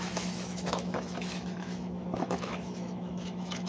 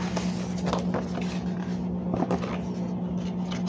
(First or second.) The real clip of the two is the second